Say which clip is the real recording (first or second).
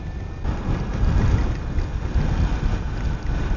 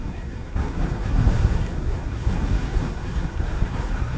first